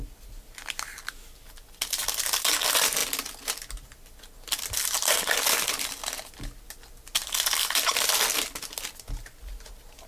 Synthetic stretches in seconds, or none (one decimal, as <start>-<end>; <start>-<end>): none